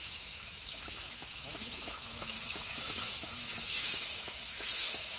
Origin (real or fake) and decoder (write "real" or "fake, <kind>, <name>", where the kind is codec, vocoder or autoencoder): fake, autoencoder, DAC-VAE